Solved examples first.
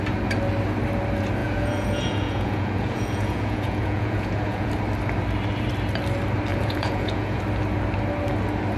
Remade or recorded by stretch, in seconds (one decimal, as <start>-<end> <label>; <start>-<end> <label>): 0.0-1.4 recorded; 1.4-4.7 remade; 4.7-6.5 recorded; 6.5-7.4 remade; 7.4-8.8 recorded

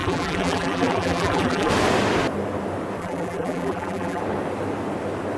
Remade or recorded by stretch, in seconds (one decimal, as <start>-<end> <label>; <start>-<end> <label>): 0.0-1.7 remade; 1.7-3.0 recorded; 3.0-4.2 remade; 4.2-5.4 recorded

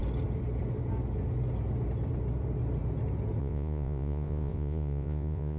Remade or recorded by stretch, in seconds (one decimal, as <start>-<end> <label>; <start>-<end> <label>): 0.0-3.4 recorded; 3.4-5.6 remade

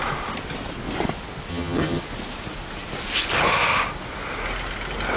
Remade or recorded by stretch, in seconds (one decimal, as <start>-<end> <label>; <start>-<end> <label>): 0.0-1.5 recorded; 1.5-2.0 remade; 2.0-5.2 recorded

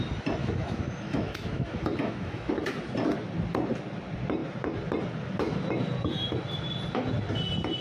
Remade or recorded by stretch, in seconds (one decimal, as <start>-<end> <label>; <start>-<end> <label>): 0.0-0.4 recorded; 0.4-2.5 remade; 2.5-7.8 recorded

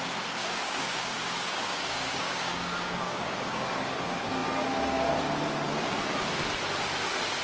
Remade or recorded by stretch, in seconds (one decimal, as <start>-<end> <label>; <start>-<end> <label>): 0.0-0.4 recorded; 0.4-3.6 remade; 3.6-7.4 recorded